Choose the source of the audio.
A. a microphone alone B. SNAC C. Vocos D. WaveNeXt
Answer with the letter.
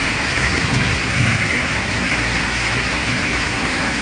B